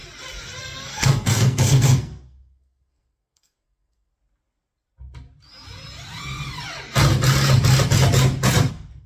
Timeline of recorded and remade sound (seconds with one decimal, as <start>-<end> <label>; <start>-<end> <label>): 0.0-0.6 recorded; 0.6-4.1 remade; 4.1-8.7 recorded; 8.7-9.1 remade